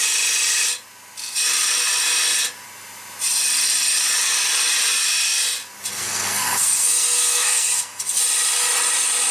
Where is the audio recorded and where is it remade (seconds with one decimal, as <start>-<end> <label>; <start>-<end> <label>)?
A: 0.0-5.9 recorded; 5.9-8.2 remade; 8.2-9.3 recorded